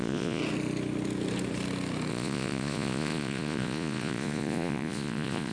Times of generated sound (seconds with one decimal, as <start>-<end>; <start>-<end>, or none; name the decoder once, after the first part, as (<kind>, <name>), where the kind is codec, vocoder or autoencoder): 0.0-0.4 (vocoder, Vocos); 2.1-5.5